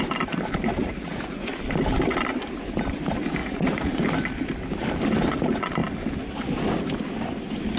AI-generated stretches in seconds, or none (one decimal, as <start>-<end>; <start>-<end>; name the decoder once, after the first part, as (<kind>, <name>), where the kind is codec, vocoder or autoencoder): 0.8-1.5 (vocoder, Vocos); 3.4-4.0